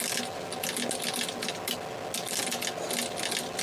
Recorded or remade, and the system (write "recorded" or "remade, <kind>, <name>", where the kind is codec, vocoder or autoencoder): recorded